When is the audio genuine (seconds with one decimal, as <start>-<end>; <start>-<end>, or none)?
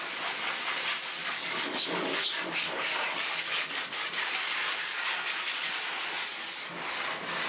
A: 0.0-1.2; 5.7-6.3; 7.1-7.5